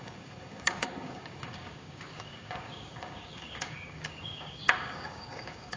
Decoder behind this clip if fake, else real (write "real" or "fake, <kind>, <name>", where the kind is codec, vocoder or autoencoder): fake, codec, DAC